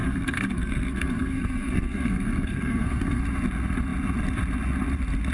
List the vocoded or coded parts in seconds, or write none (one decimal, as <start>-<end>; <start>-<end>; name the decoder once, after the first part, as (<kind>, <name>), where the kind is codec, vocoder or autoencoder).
0.0-3.2 (codec, SNAC)